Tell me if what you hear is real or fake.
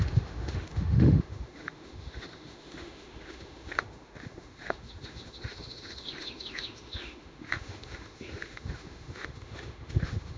fake